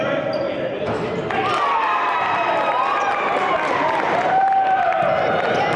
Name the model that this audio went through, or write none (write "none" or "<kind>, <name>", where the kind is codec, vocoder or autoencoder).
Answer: none